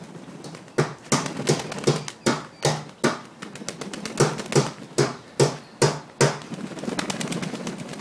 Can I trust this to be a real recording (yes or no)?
yes